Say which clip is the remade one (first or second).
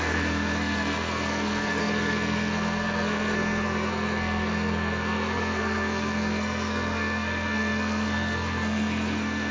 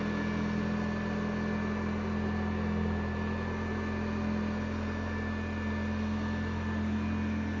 first